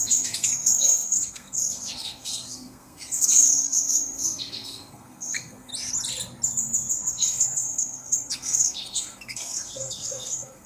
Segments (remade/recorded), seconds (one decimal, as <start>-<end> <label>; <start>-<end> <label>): 0.0-5.7 remade; 5.7-7.1 recorded; 7.1-10.7 remade